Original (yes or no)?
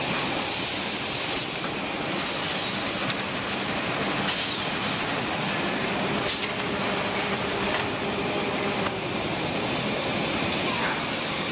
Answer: yes